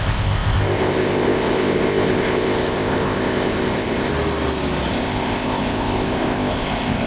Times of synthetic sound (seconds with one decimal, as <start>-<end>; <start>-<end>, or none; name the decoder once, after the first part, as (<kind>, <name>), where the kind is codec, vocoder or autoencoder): 0.0-4.1 (codec, ZipCodec); 4.9-7.1